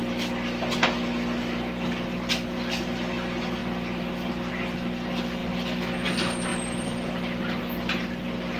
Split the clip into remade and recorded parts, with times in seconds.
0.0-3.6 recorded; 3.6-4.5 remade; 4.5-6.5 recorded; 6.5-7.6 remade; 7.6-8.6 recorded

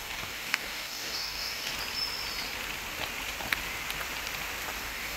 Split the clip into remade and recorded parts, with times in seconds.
0.0-1.7 remade; 1.7-4.8 recorded; 4.8-5.2 remade

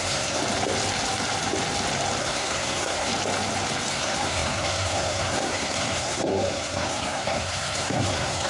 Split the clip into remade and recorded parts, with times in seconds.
0.0-0.4 remade; 0.4-2.2 recorded; 2.2-3.1 remade; 3.1-3.9 recorded; 3.9-8.5 remade

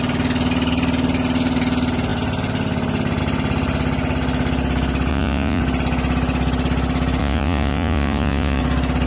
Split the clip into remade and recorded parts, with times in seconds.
0.0-5.1 recorded; 5.1-5.6 remade; 5.6-7.2 recorded; 7.2-8.6 remade; 8.6-9.1 recorded